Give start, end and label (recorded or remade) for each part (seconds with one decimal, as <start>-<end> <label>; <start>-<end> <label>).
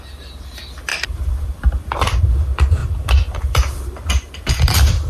0.0-0.9 recorded; 0.9-2.2 remade; 2.2-2.8 recorded; 2.8-5.1 remade